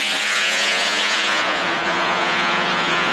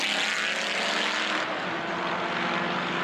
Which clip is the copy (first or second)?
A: first